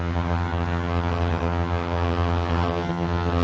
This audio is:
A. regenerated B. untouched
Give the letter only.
A